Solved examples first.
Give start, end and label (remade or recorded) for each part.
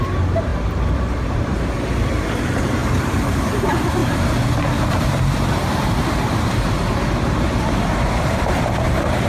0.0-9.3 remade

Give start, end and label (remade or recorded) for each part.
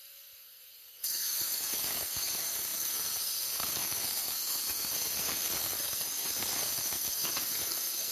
0.0-8.1 remade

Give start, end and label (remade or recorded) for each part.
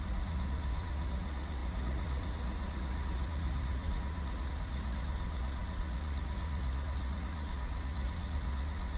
0.0-9.0 remade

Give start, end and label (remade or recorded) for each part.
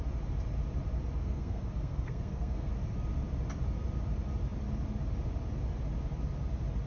0.0-1.2 recorded; 1.2-2.7 remade; 2.7-6.9 recorded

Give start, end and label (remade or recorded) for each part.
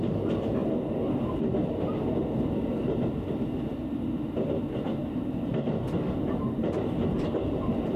0.0-8.0 recorded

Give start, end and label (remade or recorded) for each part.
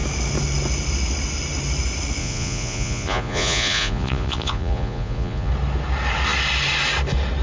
0.0-2.2 recorded; 2.2-5.5 remade; 5.5-7.4 recorded